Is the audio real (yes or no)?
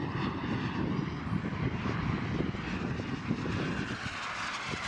yes